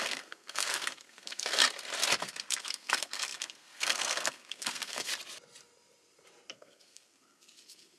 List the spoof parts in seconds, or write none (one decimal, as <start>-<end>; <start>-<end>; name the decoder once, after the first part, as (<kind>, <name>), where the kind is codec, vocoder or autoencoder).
0.0-1.6 (codec, SNAC); 2.2-5.1; 6.5-8.0